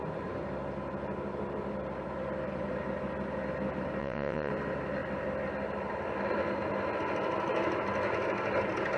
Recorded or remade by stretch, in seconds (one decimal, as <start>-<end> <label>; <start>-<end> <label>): 0.0-4.0 recorded; 4.0-4.5 remade; 4.5-9.0 recorded